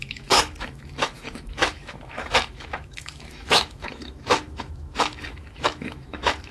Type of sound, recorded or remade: remade